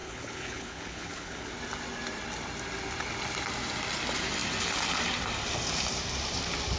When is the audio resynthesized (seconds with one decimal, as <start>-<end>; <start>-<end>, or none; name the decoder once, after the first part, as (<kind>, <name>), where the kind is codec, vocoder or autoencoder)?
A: 0.0-1.5 (codec, HILCodec)